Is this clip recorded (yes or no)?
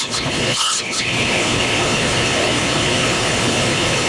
no